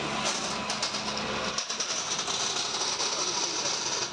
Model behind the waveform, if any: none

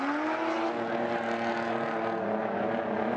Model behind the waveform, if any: none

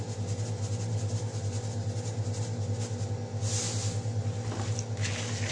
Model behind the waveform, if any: none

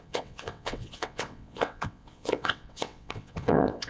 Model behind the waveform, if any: vocoder, WaveNeXt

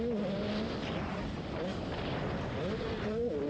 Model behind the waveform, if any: none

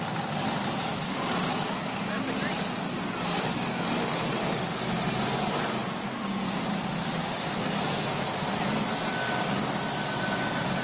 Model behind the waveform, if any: none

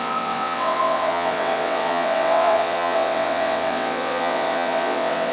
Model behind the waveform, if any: vocoder, WaveNeXt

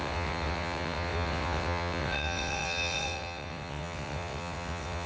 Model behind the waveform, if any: vocoder, WaveNeXt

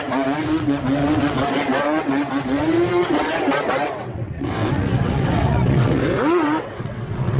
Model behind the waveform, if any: vocoder, WaveNeXt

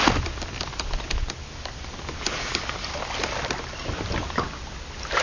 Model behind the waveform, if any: none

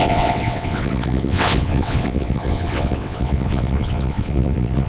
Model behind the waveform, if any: vocoder, WaveNeXt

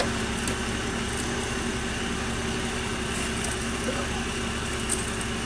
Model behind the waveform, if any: none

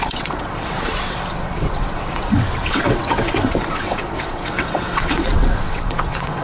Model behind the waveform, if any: vocoder, WaveNeXt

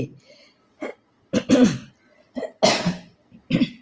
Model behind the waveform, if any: none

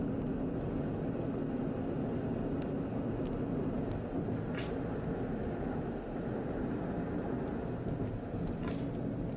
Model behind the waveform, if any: none